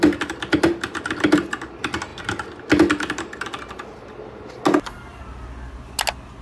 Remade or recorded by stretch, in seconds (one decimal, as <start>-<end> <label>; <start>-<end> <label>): 0.0-6.4 recorded